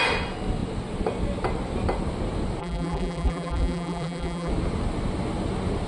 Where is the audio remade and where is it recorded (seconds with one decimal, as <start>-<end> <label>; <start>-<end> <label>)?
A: 0.0-2.6 recorded; 2.6-4.5 remade; 4.5-5.9 recorded